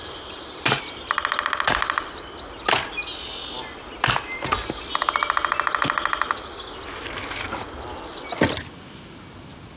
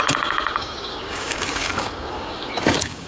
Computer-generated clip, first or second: second